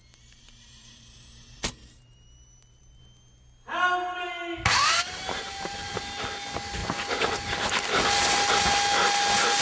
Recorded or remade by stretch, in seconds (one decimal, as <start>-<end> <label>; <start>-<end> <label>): 0.0-3.0 remade; 3.0-4.8 recorded; 4.8-6.0 remade; 6.0-9.6 recorded